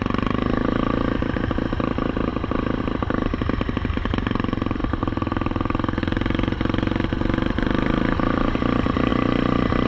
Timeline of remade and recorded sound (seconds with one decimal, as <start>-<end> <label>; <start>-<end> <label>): 0.0-4.8 remade; 4.8-6.0 recorded; 6.0-9.9 remade